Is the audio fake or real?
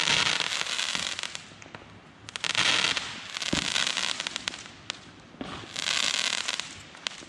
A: real